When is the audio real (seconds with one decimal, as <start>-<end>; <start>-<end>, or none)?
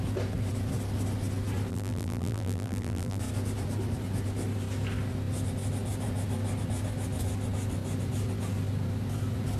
0.0-1.7; 3.2-9.6